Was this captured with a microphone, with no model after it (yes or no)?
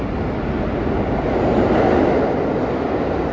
yes